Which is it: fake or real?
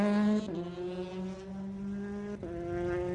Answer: real